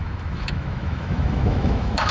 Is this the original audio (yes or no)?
no